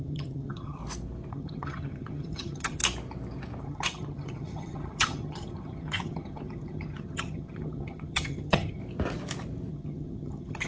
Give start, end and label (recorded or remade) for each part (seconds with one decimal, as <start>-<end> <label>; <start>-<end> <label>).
0.0-0.8 remade; 0.8-1.3 recorded; 1.3-2.8 remade; 2.8-3.6 recorded; 3.6-8.8 remade; 8.8-9.7 recorded; 9.7-10.7 remade